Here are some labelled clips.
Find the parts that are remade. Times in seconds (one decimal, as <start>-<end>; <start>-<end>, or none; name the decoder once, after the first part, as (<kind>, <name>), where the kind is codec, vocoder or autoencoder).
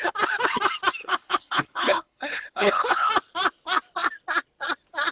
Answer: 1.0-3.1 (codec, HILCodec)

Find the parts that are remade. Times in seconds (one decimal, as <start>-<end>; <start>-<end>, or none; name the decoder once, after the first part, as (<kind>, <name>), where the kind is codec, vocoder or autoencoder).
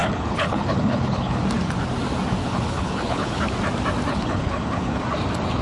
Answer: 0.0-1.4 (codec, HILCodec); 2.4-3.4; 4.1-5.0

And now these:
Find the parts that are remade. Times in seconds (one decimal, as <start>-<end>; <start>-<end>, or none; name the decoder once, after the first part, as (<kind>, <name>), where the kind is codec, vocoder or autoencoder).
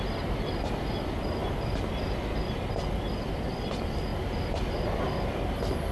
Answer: none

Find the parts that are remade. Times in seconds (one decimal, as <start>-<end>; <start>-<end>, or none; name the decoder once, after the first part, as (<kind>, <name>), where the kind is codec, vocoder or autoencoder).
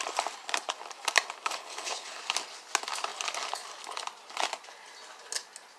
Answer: 1.6-2.2 (codec, HILCodec)